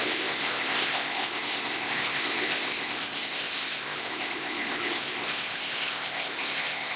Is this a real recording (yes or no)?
no